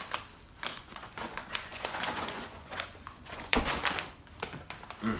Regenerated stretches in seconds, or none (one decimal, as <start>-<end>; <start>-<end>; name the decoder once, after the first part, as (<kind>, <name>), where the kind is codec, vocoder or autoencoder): 0.7-3.8 (vocoder, Vocos)